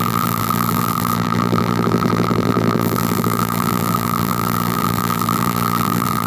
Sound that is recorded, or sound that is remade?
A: remade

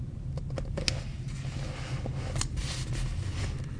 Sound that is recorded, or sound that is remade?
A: recorded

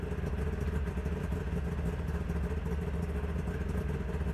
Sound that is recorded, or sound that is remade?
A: recorded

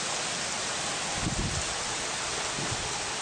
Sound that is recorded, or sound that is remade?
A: recorded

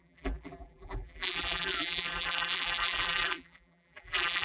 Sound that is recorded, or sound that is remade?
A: remade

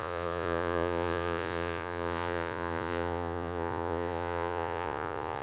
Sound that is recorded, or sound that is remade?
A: remade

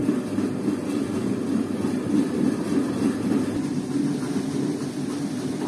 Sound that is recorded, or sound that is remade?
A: recorded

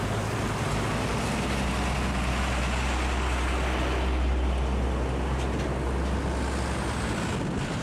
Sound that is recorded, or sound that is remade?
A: recorded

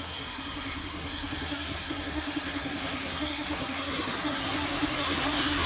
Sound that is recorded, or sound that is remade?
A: remade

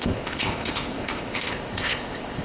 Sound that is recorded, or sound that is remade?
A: remade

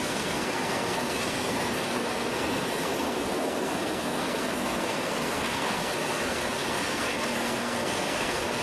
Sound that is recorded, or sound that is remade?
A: remade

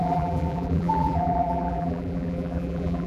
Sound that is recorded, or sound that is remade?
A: remade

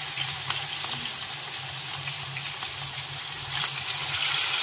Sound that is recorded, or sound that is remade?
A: recorded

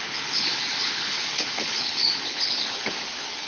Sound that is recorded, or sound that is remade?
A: remade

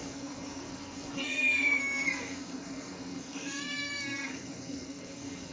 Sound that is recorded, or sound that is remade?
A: remade